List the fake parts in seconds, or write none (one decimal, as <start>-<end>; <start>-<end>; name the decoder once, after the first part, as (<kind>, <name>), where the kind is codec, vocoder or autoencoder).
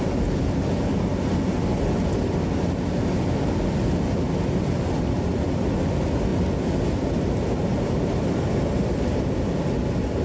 none